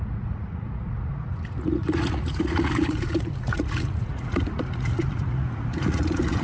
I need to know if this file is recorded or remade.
remade